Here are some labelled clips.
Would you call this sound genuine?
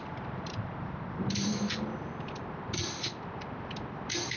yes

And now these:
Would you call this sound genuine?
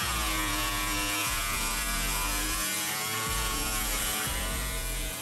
no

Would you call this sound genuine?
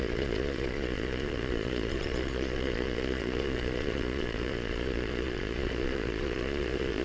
no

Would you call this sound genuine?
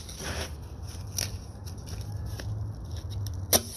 yes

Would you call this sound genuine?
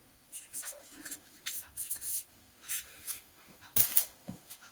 no